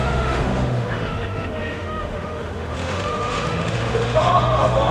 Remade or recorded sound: remade